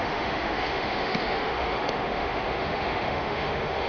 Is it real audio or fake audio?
fake